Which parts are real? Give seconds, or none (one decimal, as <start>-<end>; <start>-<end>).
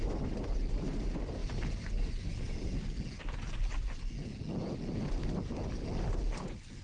0.0-6.8